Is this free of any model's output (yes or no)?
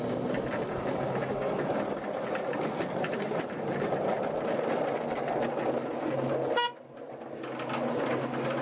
yes